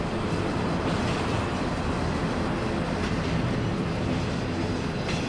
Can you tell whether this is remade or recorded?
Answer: recorded